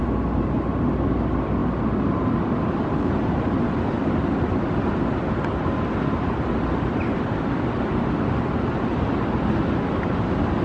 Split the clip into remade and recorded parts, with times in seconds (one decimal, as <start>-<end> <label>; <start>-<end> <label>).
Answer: 0.0-10.6 recorded